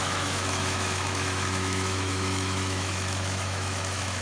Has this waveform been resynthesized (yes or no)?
yes